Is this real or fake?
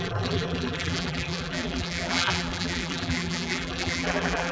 fake